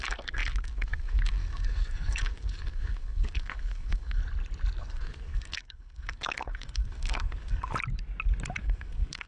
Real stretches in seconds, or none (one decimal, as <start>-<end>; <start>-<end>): 4.2-4.8; 7.7-8.6